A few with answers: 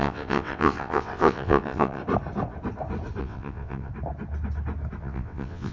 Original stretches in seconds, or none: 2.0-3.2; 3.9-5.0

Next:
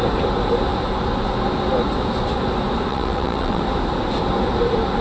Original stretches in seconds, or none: 0.0-2.9; 3.6-5.0

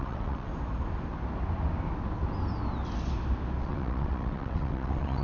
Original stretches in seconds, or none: 0.5-3.6